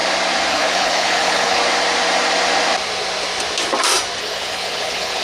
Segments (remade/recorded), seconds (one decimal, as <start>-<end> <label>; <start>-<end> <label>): 0.0-0.5 recorded; 0.5-1.6 remade; 1.6-4.2 recorded; 4.2-5.2 remade